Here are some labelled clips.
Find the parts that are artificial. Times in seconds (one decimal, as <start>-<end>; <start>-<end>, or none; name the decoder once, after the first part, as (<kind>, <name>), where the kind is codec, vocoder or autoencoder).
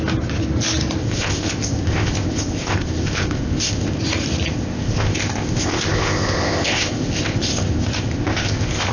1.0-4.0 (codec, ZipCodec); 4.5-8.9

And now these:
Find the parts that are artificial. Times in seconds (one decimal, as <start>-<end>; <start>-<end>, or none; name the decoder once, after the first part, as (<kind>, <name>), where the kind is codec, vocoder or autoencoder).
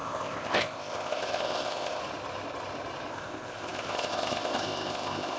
0.0-2.0 (codec, ZipCodec); 3.1-5.4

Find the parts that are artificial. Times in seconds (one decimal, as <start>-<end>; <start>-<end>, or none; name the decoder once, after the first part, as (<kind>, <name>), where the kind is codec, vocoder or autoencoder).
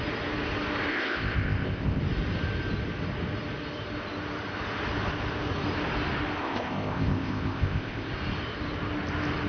0.9-2.0 (codec, ZipCodec); 6.4-8.1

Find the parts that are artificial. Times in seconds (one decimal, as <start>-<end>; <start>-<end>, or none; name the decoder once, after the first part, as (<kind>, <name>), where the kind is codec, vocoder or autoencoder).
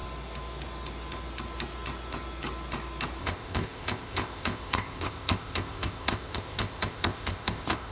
3.2-7.9 (codec, ZipCodec)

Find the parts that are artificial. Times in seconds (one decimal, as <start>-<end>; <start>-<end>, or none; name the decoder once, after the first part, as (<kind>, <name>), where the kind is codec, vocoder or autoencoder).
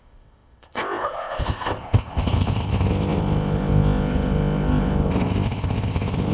0.0-6.3 (codec, ZipCodec)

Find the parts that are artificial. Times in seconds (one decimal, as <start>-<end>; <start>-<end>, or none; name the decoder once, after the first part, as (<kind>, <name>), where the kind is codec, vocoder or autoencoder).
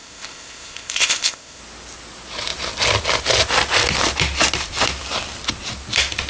0.0-1.6 (codec, ZipCodec)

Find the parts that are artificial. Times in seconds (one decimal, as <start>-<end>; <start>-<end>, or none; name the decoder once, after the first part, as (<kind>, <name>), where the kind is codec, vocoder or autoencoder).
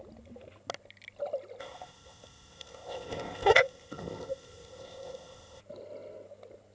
1.6-5.6 (codec, ZipCodec)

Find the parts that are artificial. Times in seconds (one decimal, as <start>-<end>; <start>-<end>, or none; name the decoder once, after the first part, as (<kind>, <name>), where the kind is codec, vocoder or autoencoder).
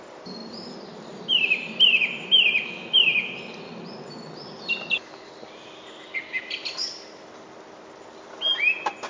none